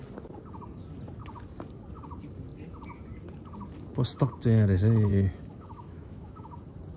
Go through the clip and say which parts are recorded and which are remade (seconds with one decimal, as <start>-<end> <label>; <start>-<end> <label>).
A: 0.0-5.1 recorded; 5.1-6.6 remade; 6.6-7.0 recorded